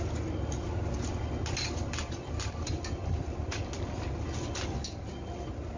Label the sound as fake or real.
real